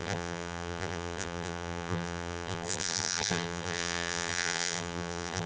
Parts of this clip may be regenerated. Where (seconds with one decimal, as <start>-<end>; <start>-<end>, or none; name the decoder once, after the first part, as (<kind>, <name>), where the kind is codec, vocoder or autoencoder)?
0.0-5.5 (vocoder, BigVGAN v2)